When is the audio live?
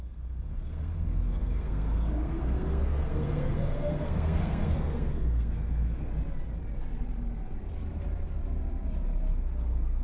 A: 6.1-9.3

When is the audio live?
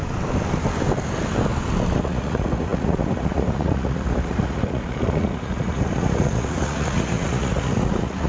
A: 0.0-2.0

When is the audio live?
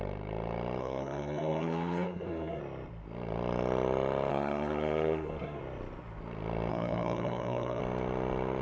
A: 0.0-0.8; 2.6-4.3; 5.6-6.7; 7.8-8.6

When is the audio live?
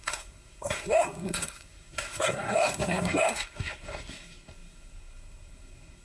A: none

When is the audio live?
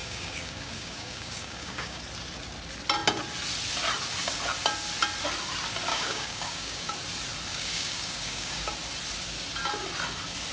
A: 2.0-5.9; 6.9-7.5; 8.7-10.5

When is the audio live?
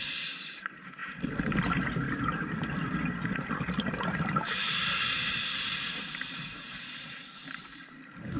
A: 0.0-8.4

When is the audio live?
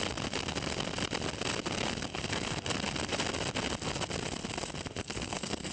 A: 0.0-2.1; 2.6-5.0